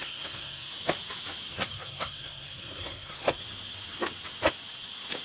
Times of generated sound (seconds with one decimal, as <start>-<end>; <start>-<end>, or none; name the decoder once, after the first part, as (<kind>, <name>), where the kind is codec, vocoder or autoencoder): 0.0-0.7 (codec, SNAC); 1.5-3.4